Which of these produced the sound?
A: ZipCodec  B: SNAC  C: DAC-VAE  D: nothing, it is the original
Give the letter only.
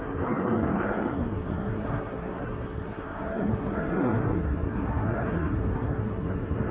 B